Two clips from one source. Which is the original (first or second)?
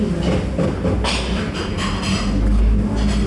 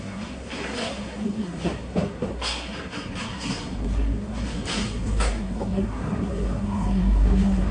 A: first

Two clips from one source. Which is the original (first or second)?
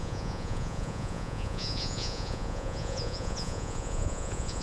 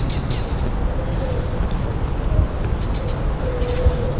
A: second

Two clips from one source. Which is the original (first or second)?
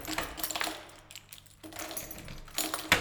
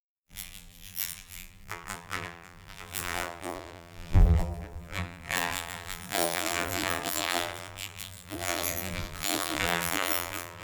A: first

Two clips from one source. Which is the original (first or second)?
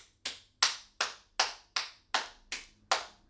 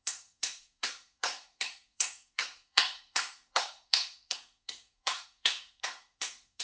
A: first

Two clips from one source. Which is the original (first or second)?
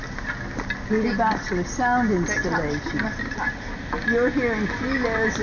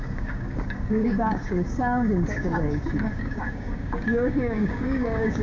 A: first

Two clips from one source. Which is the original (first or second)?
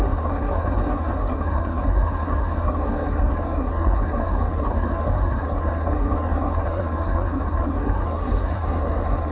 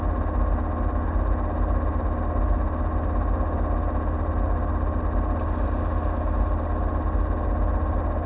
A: second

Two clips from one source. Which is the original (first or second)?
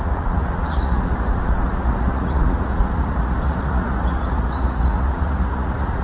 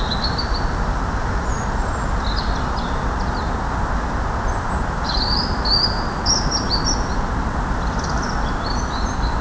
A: second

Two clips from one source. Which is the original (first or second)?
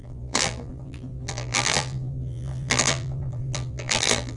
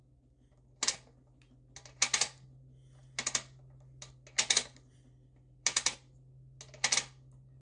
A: second